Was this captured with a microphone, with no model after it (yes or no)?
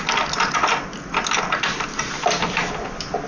yes